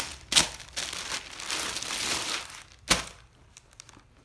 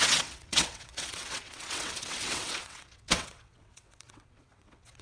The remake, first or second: second